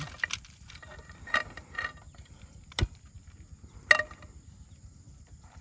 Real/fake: real